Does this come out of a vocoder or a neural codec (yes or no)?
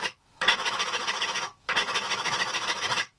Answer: yes